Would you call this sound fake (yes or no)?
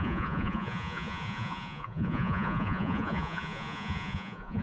yes